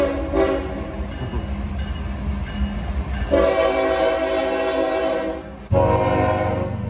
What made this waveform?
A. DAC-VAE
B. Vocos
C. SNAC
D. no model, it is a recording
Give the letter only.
D